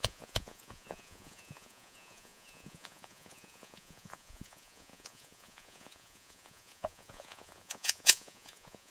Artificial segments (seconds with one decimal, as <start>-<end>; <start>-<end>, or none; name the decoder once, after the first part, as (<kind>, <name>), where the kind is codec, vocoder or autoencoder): 0.0-8.9 (vocoder, Vocos)